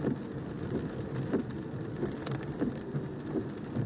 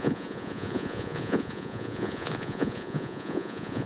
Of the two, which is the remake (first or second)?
second